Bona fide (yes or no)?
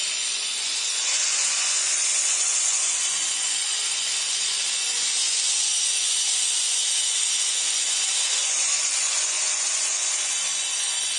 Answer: no